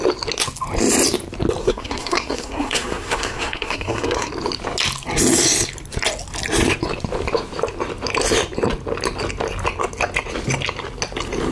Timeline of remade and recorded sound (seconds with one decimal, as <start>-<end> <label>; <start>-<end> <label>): 0.0-1.6 recorded; 1.6-4.3 remade; 4.3-11.5 recorded